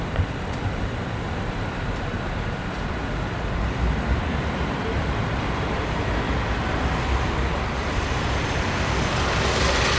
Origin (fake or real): fake